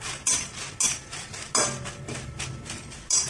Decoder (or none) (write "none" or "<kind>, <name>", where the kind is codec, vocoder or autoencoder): none